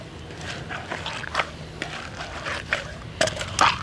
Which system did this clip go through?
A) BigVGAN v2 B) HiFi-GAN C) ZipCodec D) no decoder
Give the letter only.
D